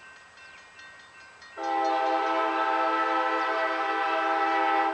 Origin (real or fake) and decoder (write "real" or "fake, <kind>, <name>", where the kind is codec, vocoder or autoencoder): real